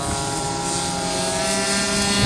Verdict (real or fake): real